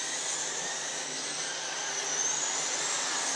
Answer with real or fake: real